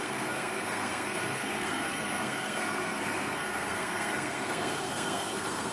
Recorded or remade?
remade